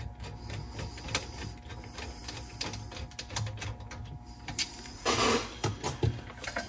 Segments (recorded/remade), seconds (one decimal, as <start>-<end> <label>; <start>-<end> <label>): 0.0-4.9 recorded; 4.9-5.5 remade; 5.5-6.7 recorded

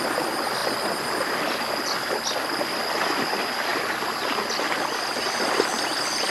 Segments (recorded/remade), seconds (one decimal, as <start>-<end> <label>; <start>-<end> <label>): 0.0-6.3 recorded

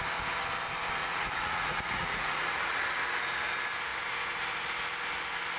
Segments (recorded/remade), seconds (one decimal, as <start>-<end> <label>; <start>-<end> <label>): 0.0-1.0 recorded; 1.0-3.0 remade; 3.0-5.6 recorded

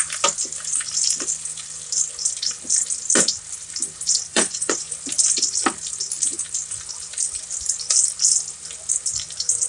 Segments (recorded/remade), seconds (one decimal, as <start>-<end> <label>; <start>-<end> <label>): 0.0-4.3 recorded; 4.3-4.9 remade; 4.9-9.7 recorded